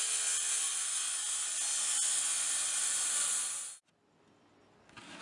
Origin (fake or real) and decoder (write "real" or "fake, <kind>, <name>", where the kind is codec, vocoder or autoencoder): real